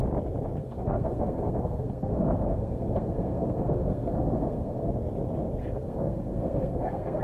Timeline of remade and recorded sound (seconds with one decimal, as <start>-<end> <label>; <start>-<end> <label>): 0.0-0.6 recorded; 0.6-4.9 remade; 4.9-5.6 recorded; 5.6-7.2 remade